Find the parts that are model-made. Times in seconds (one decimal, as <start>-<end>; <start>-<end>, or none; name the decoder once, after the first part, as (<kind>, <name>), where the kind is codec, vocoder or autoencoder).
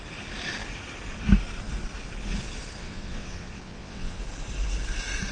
2.8-4.2 (vocoder, WaveNeXt)